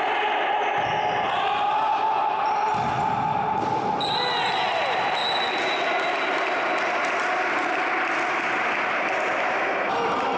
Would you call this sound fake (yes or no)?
no